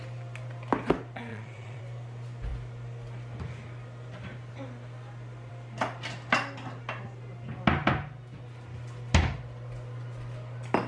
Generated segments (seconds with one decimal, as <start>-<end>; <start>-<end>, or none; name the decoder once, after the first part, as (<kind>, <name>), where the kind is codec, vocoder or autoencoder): 1.3-1.8 (vocoder, Vocos)